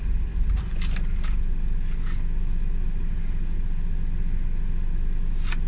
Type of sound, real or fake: real